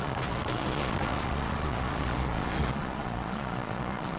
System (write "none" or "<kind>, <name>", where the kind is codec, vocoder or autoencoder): vocoder, Vocos